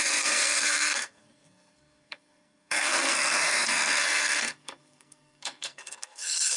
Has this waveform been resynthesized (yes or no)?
yes